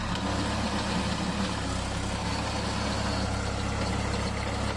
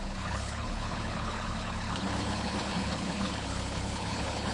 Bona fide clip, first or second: first